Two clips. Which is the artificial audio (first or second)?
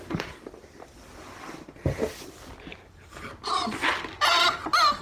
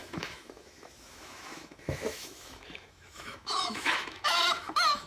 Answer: second